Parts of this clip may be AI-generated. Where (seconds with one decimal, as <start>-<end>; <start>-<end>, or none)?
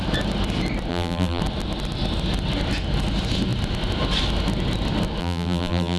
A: 0.9-1.4; 5.2-6.0